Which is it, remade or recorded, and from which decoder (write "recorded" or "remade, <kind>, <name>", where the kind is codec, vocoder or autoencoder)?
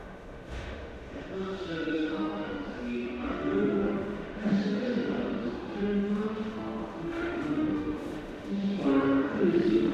remade, autoencoder, DAC-VAE